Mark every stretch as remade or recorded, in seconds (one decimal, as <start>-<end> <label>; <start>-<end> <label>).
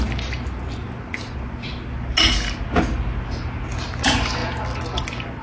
0.0-5.4 recorded